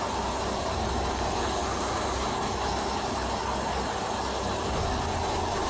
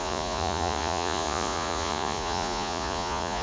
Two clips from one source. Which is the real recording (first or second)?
first